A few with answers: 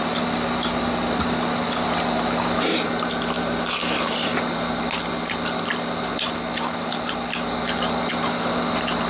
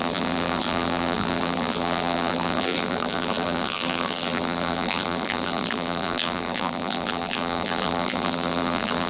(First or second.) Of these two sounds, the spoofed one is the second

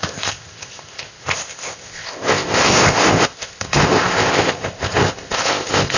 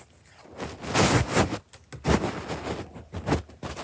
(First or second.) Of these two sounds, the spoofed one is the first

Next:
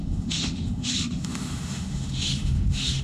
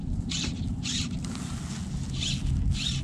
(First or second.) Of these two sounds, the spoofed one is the first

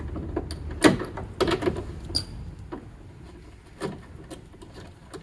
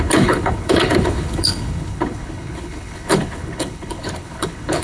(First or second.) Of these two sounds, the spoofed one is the second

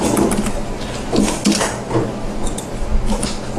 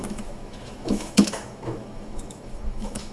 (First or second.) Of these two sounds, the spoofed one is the second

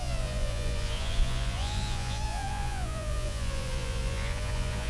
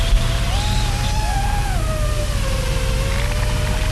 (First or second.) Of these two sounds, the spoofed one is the first